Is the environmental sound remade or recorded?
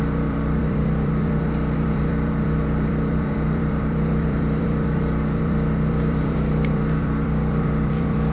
remade